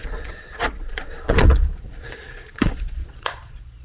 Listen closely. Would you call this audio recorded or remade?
remade